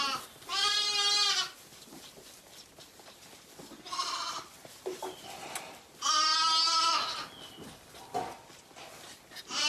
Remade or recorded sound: recorded